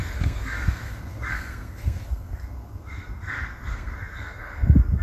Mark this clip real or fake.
fake